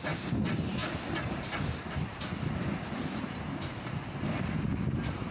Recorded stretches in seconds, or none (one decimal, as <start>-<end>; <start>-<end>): 0.0-5.3